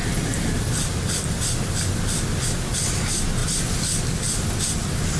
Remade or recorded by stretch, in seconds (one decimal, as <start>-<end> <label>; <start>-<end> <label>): 0.0-1.8 remade; 1.8-5.2 recorded